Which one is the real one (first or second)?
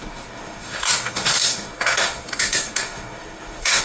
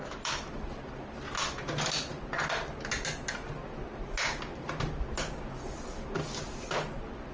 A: second